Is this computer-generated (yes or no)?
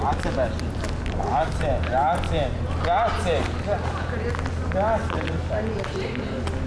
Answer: no